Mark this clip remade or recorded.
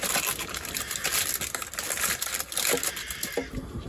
recorded